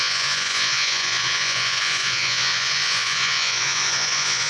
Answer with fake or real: fake